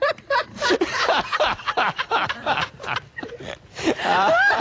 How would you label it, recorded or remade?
remade